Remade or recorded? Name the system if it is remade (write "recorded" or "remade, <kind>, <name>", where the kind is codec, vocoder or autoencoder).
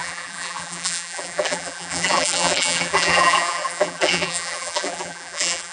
remade, vocoder, BigVGAN v2